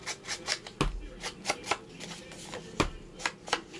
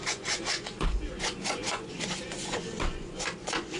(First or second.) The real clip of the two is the first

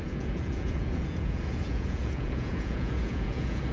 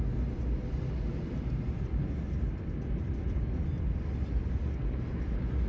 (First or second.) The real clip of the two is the second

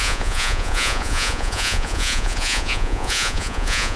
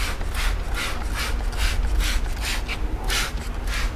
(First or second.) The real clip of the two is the second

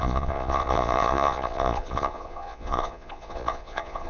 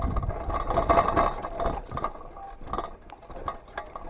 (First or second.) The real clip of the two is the second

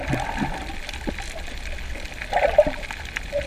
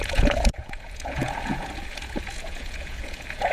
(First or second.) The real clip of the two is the first